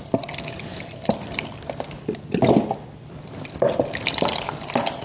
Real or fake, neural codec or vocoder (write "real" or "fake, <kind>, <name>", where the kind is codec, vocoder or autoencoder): real